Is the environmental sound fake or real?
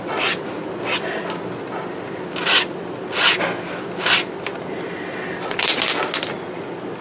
real